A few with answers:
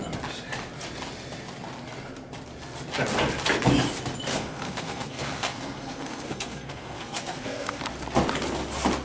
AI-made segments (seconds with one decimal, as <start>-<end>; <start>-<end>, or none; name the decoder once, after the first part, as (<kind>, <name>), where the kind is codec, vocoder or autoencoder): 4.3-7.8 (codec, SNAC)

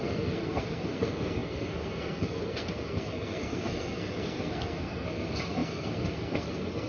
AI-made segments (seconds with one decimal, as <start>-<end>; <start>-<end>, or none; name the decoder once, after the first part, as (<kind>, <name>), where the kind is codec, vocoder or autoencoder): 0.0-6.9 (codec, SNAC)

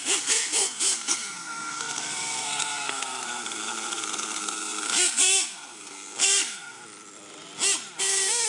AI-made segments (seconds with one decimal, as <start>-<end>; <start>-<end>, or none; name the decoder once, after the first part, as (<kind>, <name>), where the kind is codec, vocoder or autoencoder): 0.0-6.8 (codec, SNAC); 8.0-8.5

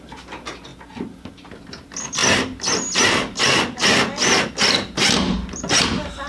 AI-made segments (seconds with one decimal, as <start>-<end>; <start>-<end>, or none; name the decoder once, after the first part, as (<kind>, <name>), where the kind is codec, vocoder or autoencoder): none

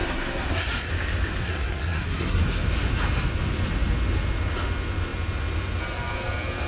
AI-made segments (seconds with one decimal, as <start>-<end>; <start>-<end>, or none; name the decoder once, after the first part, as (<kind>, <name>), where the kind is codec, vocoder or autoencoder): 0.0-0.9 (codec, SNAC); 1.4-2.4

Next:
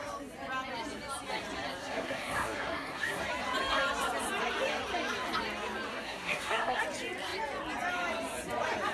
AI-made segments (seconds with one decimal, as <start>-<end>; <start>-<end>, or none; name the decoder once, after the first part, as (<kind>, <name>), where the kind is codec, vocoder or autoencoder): 1.8-3.2 (codec, SNAC); 5.9-6.8